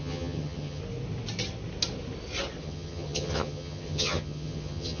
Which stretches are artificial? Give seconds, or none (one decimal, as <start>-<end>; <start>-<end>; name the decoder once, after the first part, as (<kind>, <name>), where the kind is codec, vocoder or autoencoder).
0.0-0.8 (vocoder, HiFi-GAN); 2.6-5.0